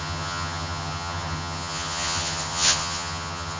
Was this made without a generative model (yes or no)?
no